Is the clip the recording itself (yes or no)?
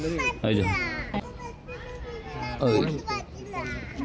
yes